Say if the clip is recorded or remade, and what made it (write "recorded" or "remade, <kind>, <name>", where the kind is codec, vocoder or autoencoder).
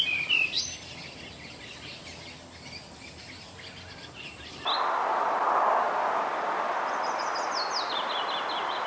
recorded